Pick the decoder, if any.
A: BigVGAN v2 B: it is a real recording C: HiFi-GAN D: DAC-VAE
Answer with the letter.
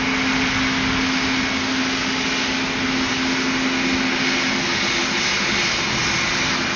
B